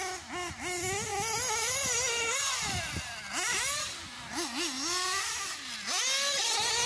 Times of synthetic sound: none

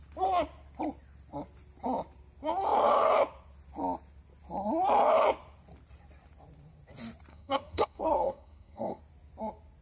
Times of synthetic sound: 7.3-9.0 (codec, SNAC)